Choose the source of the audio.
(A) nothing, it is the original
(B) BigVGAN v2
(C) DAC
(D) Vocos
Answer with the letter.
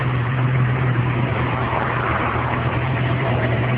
B